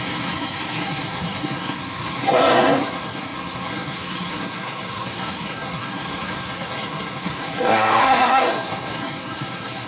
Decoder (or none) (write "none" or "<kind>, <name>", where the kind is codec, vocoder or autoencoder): codec, SNAC